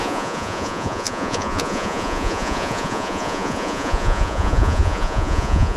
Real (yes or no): no